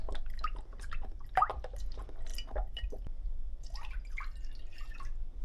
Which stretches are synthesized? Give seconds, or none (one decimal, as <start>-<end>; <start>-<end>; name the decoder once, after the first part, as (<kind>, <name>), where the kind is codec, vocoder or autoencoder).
none